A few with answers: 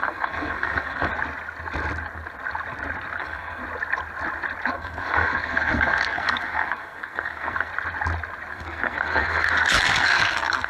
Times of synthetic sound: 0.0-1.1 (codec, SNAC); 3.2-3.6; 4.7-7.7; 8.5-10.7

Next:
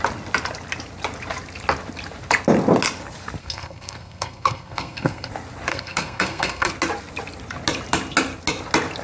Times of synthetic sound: 3.4-5.3 (codec, SNAC); 5.7-6.7

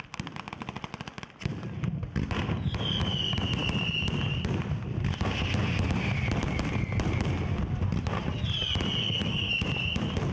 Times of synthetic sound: 9.0-9.5 (codec, SNAC)

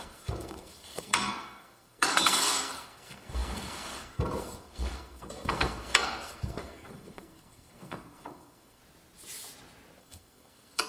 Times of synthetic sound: 0.0-8.8 (codec, SNAC); 10.0-10.9